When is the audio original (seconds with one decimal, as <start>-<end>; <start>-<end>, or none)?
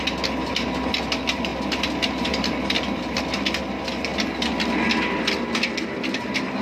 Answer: 0.0-1.5; 3.2-6.6